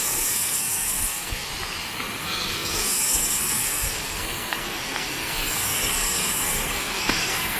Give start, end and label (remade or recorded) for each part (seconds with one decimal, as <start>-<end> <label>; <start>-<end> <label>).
0.0-1.5 remade; 1.5-2.2 recorded; 2.2-7.6 remade